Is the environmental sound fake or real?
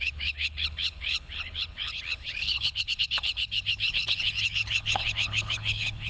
fake